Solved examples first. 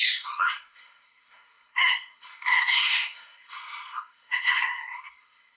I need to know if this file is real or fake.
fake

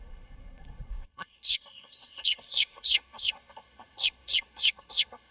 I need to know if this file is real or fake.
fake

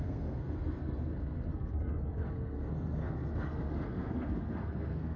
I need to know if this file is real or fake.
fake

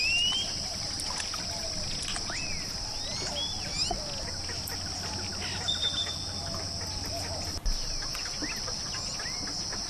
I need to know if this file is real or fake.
real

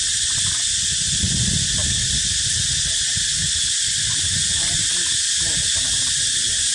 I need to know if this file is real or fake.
real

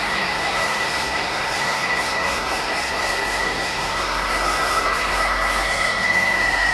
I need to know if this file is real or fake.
fake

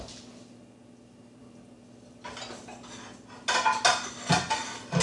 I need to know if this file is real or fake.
real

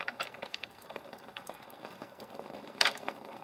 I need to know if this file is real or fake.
fake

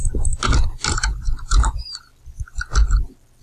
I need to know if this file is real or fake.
real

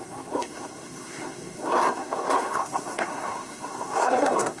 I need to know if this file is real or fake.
fake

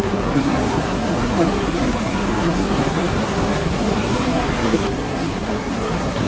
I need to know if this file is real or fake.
fake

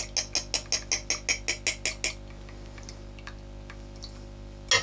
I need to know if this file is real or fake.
real